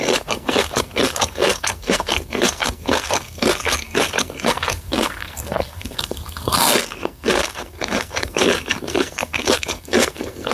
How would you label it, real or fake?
fake